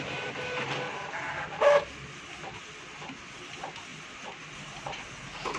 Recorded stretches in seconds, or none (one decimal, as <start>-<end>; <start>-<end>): 0.0-5.6